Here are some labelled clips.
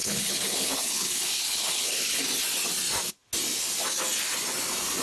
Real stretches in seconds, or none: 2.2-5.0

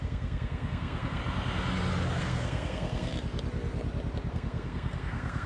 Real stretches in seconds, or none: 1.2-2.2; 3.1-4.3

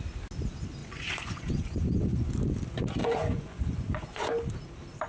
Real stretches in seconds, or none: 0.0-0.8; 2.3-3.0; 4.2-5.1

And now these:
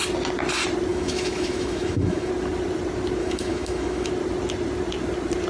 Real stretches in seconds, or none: 0.0-0.9; 2.3-3.2; 4.1-5.5

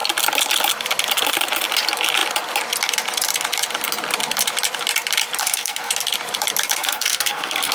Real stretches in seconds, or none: 0.0-5.4; 5.9-6.8